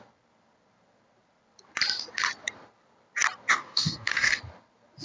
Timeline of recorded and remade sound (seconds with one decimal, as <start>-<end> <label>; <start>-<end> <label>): 0.0-3.5 recorded; 3.5-4.4 remade; 4.4-5.0 recorded

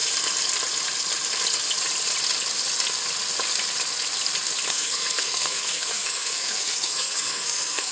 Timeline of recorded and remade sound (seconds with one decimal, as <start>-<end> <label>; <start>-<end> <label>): 0.0-4.7 recorded; 4.7-7.9 remade

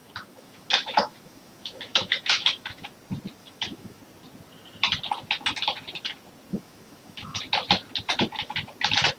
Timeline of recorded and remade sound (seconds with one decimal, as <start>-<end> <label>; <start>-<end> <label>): 0.0-2.9 remade; 2.9-3.4 recorded; 3.4-4.0 remade; 4.0-6.5 recorded; 6.5-7.4 remade; 7.4-9.2 recorded

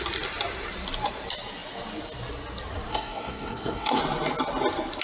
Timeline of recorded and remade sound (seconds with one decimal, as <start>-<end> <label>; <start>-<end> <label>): 0.0-2.9 recorded; 2.9-4.0 remade; 4.0-5.0 recorded

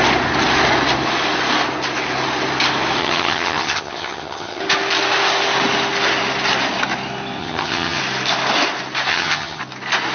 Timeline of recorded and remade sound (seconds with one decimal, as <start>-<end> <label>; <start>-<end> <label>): 0.0-3.0 recorded; 3.0-4.6 remade; 4.6-7.4 recorded; 7.4-8.0 remade; 8.0-9.1 recorded; 9.1-9.6 remade; 9.6-10.1 recorded